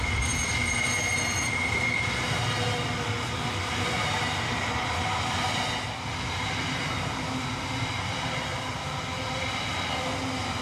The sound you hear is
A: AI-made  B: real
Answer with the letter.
B